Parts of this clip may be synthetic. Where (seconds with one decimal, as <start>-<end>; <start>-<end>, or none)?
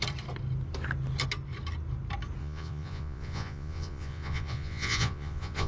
2.4-5.7